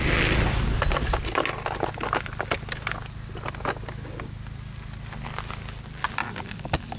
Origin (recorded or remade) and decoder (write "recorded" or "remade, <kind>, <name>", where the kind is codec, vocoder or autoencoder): recorded